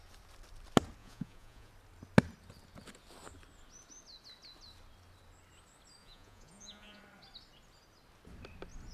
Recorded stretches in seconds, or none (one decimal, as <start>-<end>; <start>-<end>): 0.0-1.0; 1.7-6.0; 7.0-8.9